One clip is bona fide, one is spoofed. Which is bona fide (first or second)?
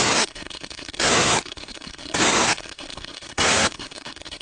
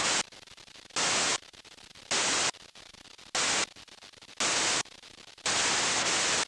second